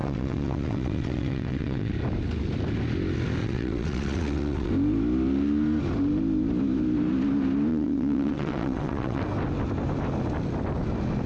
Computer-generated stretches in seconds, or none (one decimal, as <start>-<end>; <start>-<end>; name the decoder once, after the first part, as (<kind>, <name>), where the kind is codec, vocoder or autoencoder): 0.0-1.9 (vocoder, WaveNeXt); 3.4-4.7; 7.7-9.2